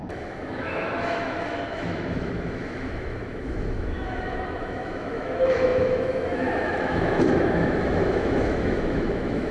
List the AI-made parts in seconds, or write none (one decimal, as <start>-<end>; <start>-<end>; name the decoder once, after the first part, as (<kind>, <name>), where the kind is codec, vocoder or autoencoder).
0.0-9.5 (autoencoder, DAC-VAE)

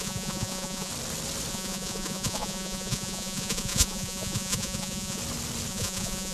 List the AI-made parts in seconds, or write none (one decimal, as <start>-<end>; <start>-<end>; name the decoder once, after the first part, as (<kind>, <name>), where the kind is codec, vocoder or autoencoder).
0.0-0.9 (vocoder, Vocos); 1.5-5.2; 5.7-6.3

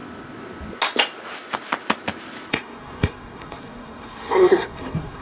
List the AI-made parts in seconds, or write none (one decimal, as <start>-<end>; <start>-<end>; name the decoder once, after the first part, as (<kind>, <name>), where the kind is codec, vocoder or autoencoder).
2.5-5.2 (codec, SNAC)

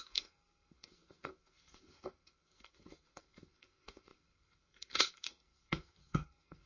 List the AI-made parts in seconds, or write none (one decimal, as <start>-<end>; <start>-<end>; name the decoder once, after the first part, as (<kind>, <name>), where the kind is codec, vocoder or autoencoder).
0.0-6.7 (codec, SNAC)

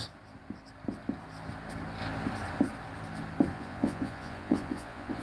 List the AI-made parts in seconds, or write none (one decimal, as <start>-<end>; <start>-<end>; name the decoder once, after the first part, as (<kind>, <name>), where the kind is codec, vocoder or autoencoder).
3.5-5.2 (vocoder, Vocos)

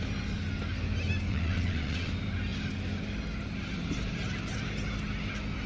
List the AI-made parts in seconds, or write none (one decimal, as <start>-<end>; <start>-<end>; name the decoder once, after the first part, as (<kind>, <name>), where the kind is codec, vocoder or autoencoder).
1.3-2.1 (vocoder, WaveNeXt)

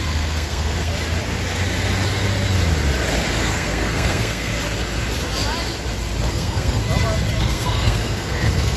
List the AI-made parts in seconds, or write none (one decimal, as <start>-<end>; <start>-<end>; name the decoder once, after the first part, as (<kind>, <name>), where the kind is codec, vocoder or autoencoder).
0.0-0.9 (codec, SNAC); 3.4-4.5; 6.3-6.8; 7.4-8.8

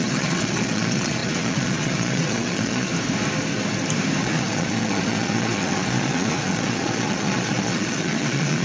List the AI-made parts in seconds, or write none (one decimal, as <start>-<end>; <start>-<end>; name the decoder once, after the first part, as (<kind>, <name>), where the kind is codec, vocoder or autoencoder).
0.0-2.9 (vocoder, Vocos); 4.2-8.6